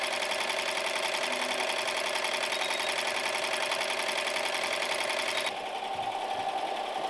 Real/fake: real